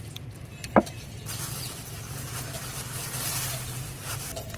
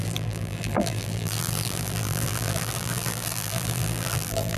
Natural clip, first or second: first